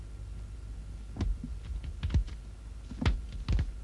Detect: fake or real real